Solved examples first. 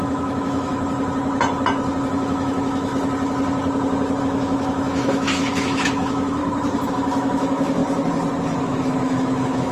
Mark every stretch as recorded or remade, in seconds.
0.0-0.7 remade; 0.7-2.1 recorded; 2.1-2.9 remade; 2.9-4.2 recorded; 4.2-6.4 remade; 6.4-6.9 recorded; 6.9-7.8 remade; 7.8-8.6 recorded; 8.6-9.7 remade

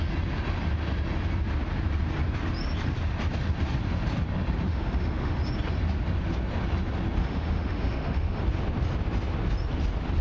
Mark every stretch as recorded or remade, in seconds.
0.0-4.7 recorded; 4.7-5.4 remade; 5.4-7.2 recorded; 7.2-8.4 remade; 8.4-10.2 recorded

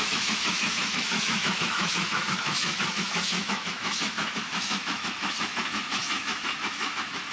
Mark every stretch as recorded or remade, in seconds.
0.0-7.3 remade

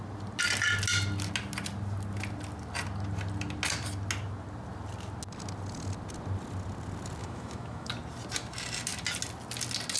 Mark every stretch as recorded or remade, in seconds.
0.0-7.2 recorded; 7.2-7.9 remade; 7.9-10.0 recorded

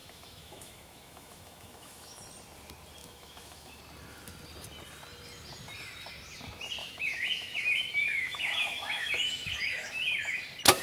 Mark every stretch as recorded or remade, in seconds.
0.0-2.2 remade; 2.2-3.0 recorded; 3.0-3.8 remade; 3.8-6.8 recorded; 6.8-10.4 remade; 10.4-10.8 recorded

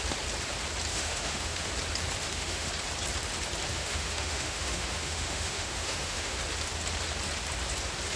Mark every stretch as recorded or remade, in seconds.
0.0-0.9 recorded; 0.9-1.7 remade; 1.7-2.2 recorded; 2.2-2.7 remade; 2.7-3.7 recorded; 3.7-6.4 remade; 6.4-8.2 recorded

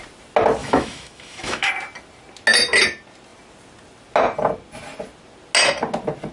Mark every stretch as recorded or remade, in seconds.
0.0-0.6 recorded; 0.6-1.7 remade; 1.7-6.3 recorded

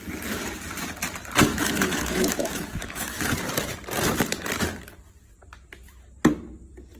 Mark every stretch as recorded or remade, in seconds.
0.0-1.5 recorded; 1.5-3.3 remade; 3.3-7.0 recorded